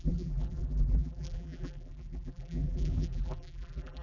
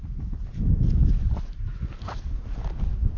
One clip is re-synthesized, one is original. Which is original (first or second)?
second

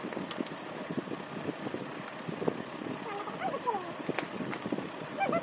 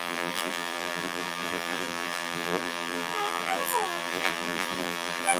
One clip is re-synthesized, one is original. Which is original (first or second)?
first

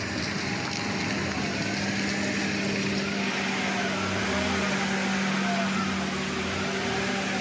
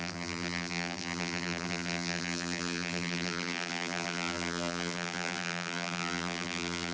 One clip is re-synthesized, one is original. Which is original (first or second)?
first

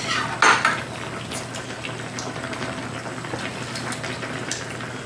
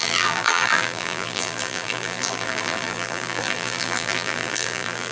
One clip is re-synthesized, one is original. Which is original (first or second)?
first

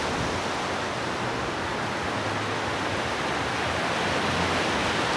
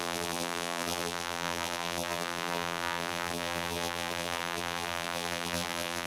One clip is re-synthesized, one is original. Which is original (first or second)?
first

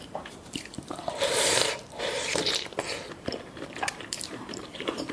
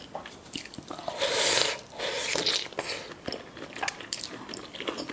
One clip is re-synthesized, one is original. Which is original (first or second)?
second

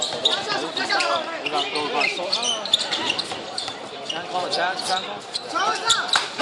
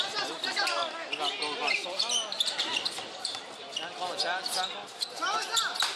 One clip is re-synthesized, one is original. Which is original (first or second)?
second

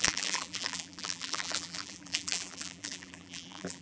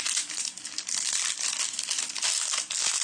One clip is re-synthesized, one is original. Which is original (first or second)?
second